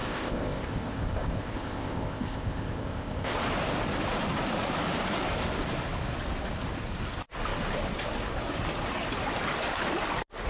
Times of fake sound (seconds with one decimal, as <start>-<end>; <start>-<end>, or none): 0.0-3.3